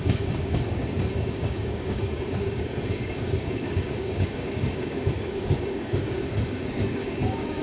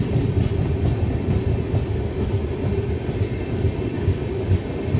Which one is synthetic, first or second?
first